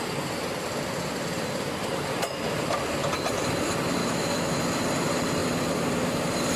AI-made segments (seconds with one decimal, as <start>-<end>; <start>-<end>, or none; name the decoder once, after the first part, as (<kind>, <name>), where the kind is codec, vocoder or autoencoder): 4.0-4.6 (autoencoder, DAC-VAE)